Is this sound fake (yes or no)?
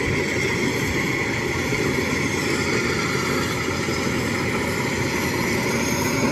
no